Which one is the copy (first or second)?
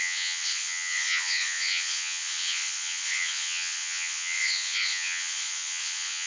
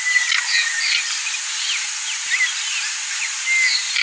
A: first